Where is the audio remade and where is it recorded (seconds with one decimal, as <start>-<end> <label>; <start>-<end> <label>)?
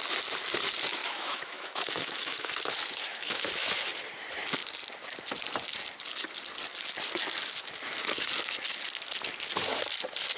0.0-1.0 recorded; 1.0-2.5 remade; 2.5-3.1 recorded; 3.1-3.7 remade; 3.7-10.4 recorded